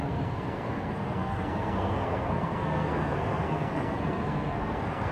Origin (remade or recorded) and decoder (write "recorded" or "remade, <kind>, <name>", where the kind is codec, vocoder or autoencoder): remade, codec, SNAC